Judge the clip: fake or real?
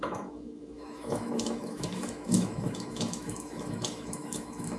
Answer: fake